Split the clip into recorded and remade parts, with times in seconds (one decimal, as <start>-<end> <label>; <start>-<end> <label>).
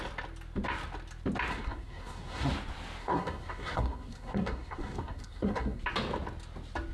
0.0-1.5 recorded; 1.5-2.5 remade; 2.5-3.0 recorded; 3.0-5.8 remade; 5.8-6.9 recorded